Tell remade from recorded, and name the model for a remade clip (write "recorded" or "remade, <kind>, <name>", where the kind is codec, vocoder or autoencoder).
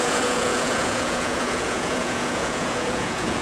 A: remade, vocoder, Vocos